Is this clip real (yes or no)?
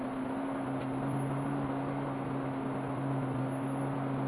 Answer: yes